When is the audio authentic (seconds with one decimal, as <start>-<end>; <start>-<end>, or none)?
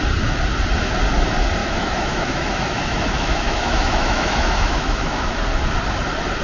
0.0-1.6; 5.4-6.4